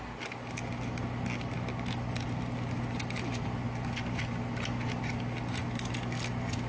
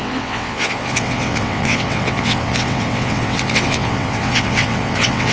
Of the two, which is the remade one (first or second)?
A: second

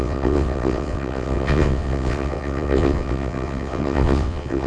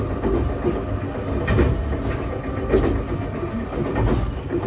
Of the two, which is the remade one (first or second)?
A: first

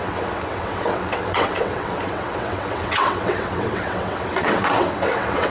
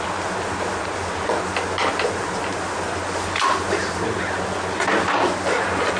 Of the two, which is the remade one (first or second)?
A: first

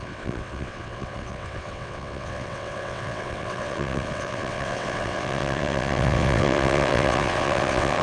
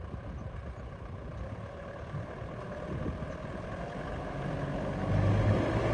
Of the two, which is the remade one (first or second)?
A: first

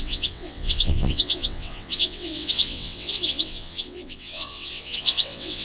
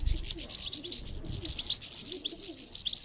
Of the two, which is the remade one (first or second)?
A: first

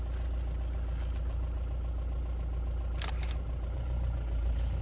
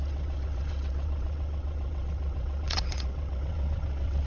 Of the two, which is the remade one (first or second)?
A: second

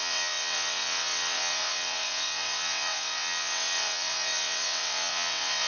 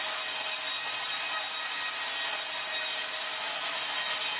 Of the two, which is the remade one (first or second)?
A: first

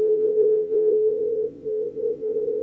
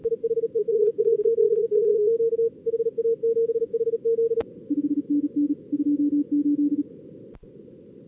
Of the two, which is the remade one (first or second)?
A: first